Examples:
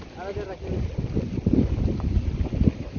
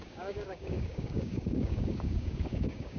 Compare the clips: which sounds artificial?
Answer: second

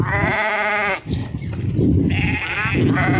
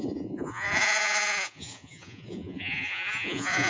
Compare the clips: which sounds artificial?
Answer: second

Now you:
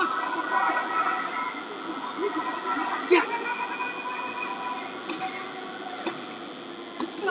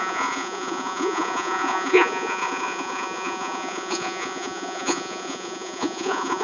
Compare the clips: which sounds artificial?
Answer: second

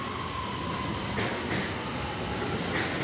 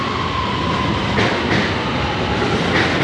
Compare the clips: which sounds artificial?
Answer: second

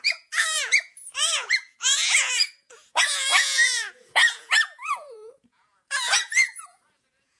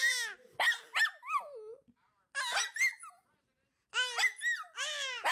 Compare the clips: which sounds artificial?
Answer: first